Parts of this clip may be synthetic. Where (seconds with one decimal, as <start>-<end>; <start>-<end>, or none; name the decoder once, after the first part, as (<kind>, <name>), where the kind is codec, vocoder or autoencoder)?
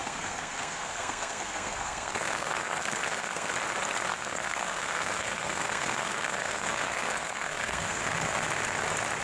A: 0.0-3.5 (codec, SNAC); 4.1-8.0